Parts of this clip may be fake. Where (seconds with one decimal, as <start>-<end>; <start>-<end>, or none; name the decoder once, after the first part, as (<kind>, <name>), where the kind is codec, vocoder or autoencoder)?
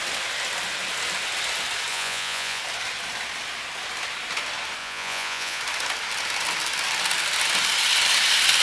1.9-2.6 (vocoder, Vocos); 4.8-5.6